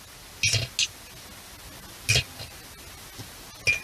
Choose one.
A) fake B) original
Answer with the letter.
B